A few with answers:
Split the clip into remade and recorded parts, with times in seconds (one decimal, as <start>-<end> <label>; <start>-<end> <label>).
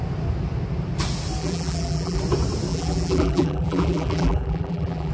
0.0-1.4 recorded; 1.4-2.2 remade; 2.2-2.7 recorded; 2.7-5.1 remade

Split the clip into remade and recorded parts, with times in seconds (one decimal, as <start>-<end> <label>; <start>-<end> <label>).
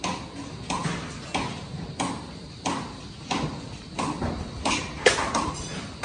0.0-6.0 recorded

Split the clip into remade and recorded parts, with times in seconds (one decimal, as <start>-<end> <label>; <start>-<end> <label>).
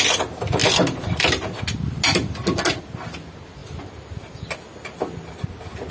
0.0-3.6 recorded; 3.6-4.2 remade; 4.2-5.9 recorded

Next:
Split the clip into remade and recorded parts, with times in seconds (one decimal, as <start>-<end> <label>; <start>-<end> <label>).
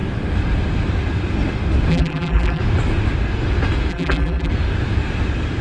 0.0-1.9 recorded; 1.9-2.6 remade; 2.6-3.9 recorded; 3.9-4.5 remade; 4.5-5.6 recorded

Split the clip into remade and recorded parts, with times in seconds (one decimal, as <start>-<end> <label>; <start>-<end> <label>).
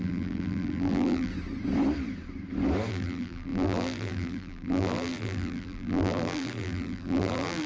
0.0-1.3 remade; 1.3-2.9 recorded; 2.9-7.7 remade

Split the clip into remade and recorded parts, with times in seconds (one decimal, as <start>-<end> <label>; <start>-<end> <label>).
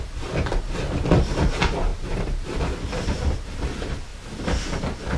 0.0-4.1 remade; 4.1-5.2 recorded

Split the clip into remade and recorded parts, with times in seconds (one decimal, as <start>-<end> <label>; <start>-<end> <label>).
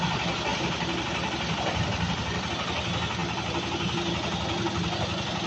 0.0-0.5 recorded; 0.5-2.5 remade; 2.5-5.5 recorded